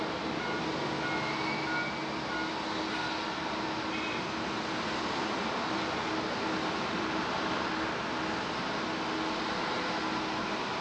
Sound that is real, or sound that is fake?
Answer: real